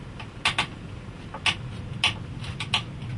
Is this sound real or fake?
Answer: real